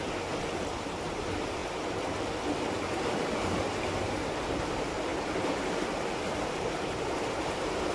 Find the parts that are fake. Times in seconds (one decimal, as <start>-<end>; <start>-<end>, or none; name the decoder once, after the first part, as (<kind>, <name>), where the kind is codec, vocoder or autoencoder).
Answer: 0.0-1.6 (vocoder, BigVGAN v2); 2.8-5.1; 6.3-7.9